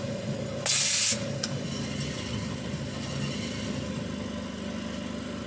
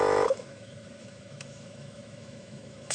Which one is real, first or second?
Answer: first